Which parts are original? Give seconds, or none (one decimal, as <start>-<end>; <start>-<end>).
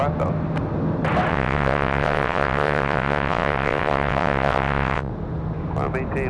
0.0-1.3; 5.1-6.3